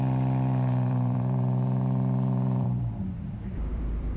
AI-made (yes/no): yes